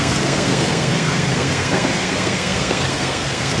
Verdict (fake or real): fake